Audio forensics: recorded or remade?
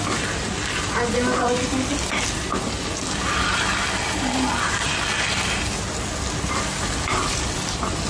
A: recorded